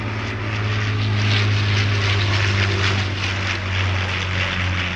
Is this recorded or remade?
recorded